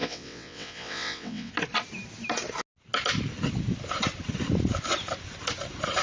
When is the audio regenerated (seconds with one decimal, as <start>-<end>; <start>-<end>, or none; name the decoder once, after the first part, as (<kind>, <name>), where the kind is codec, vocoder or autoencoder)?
0.0-1.5 (vocoder, WaveNeXt)